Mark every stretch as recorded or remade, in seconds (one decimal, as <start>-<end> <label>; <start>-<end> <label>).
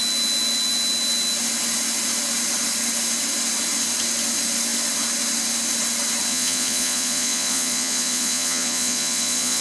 0.0-6.3 recorded; 6.3-9.6 remade